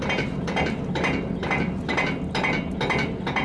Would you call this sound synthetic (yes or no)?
no